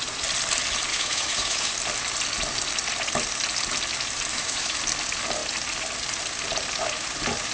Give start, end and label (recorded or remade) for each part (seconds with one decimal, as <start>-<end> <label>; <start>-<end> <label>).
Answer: 0.0-0.9 recorded; 0.9-1.7 remade; 1.7-4.3 recorded; 4.3-4.8 remade; 4.8-7.5 recorded